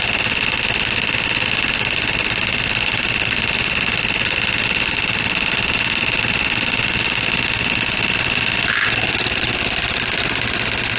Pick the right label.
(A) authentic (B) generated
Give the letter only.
A